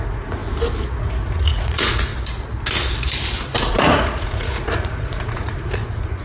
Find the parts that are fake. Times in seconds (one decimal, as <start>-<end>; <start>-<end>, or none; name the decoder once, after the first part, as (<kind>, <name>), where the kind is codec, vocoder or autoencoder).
0.0-0.4 (vocoder, Vocos); 1.0-2.1; 3.7-6.2